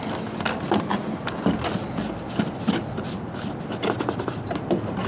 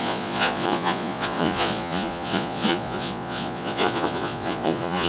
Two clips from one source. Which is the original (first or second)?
first